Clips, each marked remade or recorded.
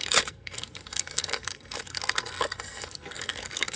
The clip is remade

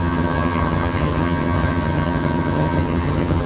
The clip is remade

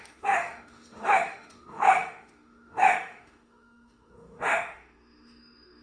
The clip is remade